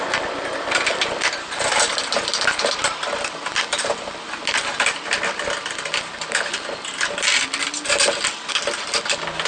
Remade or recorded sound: recorded